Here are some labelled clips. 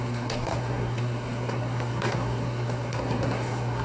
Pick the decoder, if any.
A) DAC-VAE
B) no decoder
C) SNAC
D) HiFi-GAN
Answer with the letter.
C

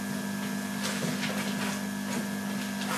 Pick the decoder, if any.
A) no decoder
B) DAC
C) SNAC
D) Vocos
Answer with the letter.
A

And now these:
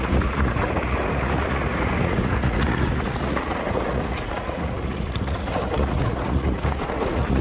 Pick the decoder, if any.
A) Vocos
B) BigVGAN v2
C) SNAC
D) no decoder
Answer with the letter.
A